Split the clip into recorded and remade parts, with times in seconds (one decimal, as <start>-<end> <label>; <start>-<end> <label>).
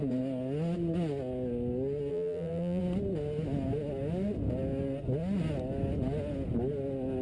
0.0-2.1 recorded; 2.1-2.8 remade; 2.8-7.2 recorded